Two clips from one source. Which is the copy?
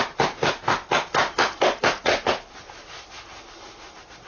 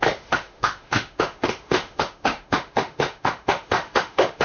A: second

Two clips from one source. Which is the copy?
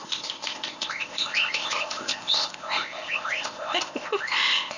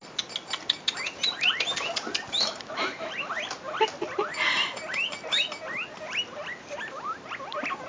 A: first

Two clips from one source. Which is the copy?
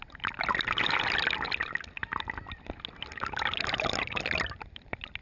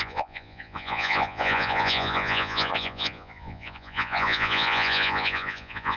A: second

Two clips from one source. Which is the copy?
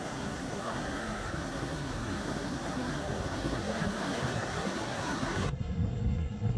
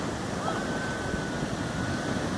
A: first